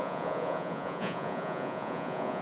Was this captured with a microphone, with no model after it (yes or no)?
no